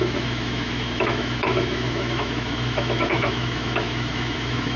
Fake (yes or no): yes